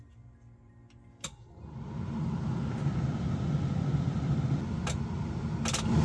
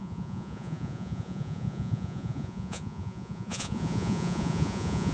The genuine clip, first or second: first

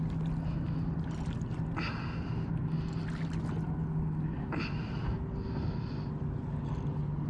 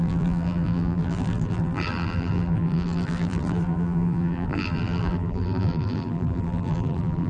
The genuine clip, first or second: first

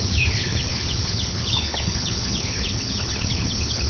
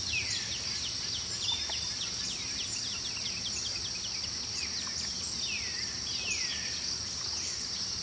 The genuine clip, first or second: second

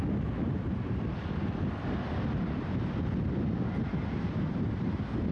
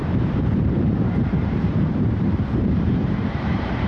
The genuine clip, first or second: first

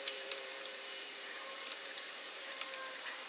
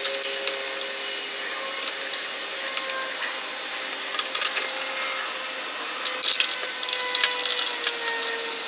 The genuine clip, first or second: second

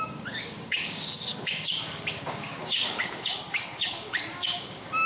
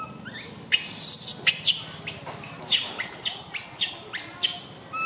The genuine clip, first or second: second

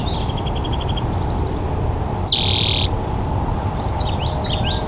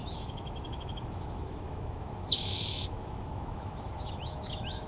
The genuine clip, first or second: first